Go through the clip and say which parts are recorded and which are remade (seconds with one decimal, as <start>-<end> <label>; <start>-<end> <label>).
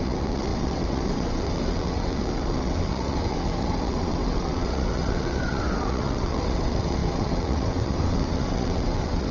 0.0-9.3 remade